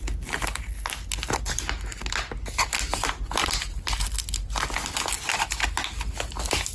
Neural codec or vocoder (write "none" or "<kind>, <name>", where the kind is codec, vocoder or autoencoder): none